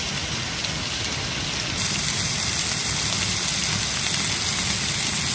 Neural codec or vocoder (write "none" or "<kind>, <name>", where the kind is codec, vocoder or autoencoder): none